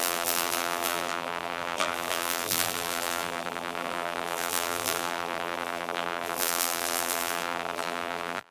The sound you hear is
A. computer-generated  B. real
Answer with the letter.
A